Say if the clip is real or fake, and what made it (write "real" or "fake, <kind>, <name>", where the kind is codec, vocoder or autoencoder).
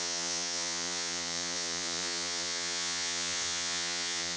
fake, vocoder, Vocos